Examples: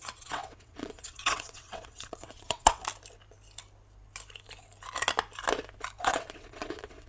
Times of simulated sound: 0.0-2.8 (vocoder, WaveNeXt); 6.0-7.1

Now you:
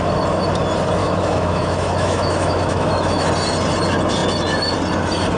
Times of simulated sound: 1.0-3.3 (autoencoder, DAC-VAE)

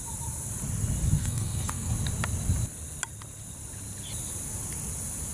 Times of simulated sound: 1.2-1.9 (codec, SNAC)

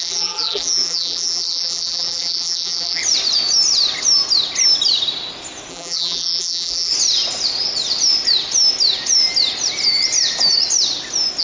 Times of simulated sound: 0.0-3.0 (vocoder, BigVGAN v2); 5.7-6.9